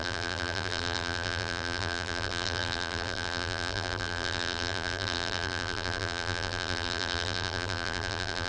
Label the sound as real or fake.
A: fake